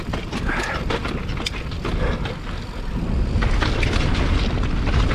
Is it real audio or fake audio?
real